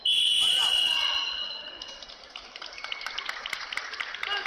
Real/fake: fake